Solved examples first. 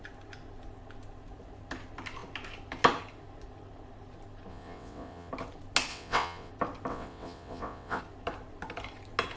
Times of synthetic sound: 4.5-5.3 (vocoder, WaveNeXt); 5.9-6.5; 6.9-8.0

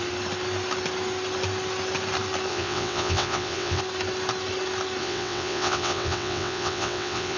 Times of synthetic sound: 2.5-3.8 (vocoder, WaveNeXt); 5.0-7.4

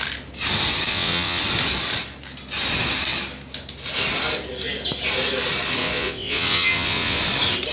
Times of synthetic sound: 0.9-1.4 (vocoder, WaveNeXt); 5.8-7.2

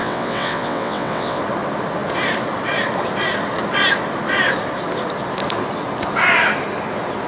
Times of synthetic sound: 0.0-1.4 (vocoder, WaveNeXt)